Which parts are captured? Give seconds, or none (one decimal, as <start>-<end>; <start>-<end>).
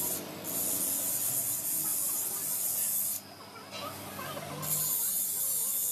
0.0-5.9